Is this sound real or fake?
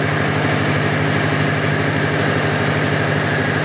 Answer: real